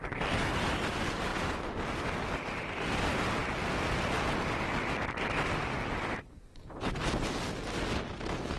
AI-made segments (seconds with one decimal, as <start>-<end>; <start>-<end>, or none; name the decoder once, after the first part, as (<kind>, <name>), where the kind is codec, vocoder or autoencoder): none